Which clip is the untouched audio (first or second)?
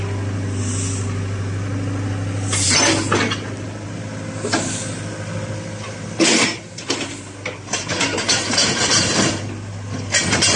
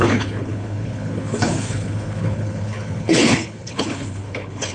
first